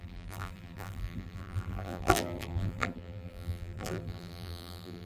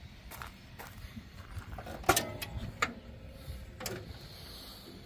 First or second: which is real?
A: second